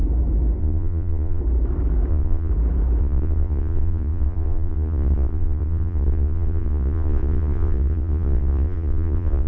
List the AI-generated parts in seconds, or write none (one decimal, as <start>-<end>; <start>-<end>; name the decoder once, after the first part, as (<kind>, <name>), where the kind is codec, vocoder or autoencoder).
0.6-1.4 (vocoder, Vocos); 2.1-2.5; 3.0-9.5